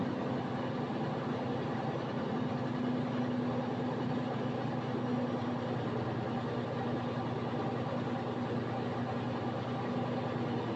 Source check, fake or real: real